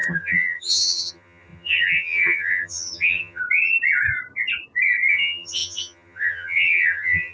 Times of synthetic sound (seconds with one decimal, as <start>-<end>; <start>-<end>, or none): 0.0-3.4; 5.1-7.3

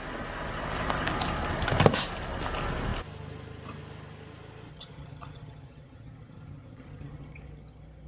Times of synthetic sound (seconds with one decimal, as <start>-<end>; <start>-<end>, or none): 4.7-8.1

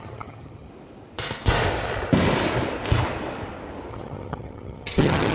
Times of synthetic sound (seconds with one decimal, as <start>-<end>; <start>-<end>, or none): 0.0-0.7; 3.9-5.3

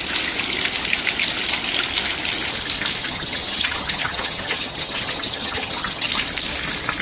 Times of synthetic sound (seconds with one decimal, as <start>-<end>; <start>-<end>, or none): 3.0-6.1

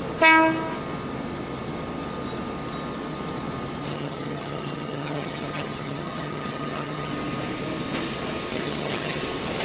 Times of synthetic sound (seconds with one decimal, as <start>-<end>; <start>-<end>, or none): 3.9-7.1; 8.5-9.2

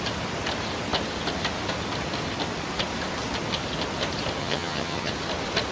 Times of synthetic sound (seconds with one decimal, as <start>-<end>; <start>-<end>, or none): 4.4-5.1

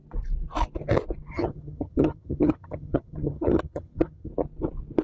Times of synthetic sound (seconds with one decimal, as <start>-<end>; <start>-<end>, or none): 1.3-4.3

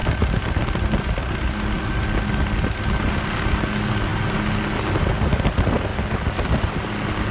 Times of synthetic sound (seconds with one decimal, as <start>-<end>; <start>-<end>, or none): none